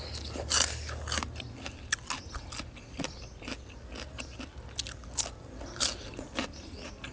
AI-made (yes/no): no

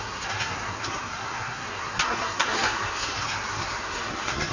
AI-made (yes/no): yes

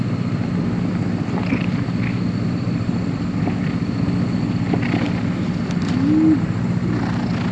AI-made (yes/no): no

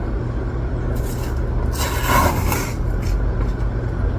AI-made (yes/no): no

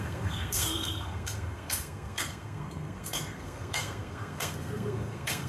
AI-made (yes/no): yes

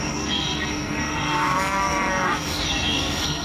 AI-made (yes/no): yes